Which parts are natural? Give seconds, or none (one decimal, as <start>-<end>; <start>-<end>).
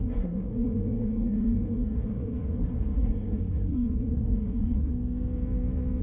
4.9-6.0